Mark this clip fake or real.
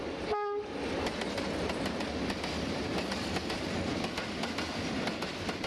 real